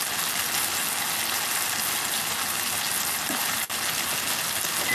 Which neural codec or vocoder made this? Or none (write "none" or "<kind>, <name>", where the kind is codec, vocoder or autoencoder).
none